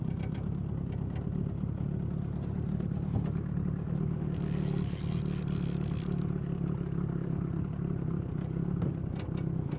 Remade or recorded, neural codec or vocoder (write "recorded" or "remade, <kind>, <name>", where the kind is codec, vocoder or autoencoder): recorded